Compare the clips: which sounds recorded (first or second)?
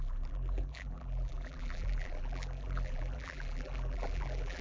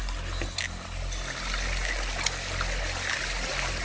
second